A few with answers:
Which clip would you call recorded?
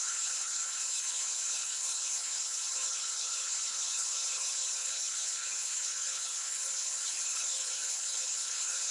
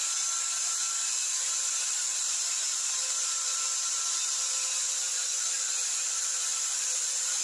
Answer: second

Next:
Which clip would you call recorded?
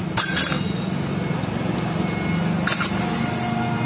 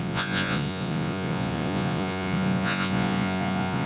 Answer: first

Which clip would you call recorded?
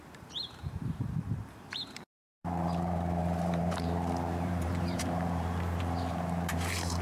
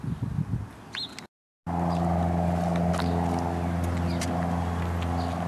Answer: second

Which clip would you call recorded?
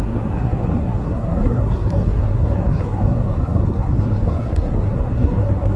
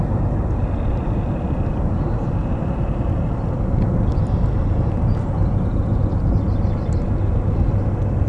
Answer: second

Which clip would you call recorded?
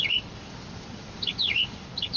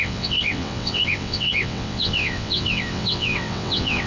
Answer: first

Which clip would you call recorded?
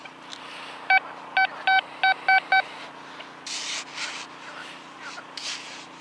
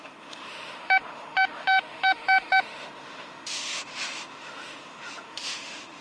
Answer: first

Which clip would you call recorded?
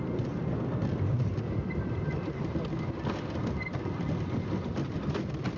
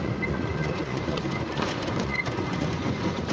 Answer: first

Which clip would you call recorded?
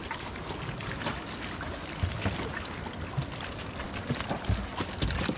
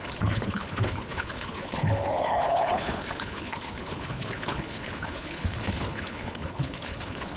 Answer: first